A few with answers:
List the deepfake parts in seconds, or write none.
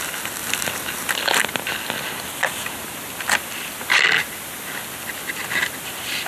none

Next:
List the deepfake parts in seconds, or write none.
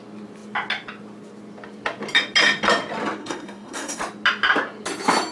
3.2-4.0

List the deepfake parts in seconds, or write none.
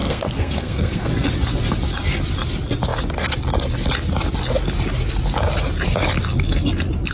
0.0-1.1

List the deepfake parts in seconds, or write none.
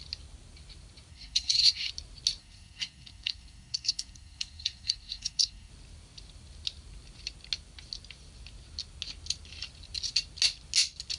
1.1-1.9; 2.4-5.7